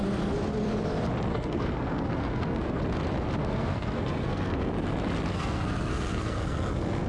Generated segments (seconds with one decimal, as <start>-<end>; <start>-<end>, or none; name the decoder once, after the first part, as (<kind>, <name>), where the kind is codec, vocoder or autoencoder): 1.3-2.8 (codec, SNAC); 3.4-4.7; 5.3-7.1